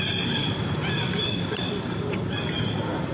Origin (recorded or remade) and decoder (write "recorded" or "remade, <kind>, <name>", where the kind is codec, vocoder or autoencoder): recorded